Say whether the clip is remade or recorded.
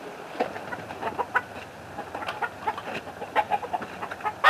recorded